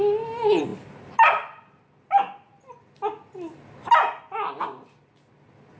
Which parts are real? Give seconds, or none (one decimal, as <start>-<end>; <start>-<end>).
0.0-5.8